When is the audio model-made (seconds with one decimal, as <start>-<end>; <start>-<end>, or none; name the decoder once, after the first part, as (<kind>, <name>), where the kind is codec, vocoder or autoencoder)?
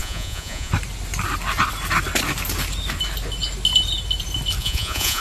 0.0-0.7 (vocoder, Vocos); 4.6-5.2